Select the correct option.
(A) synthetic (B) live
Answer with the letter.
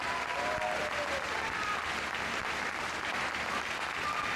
B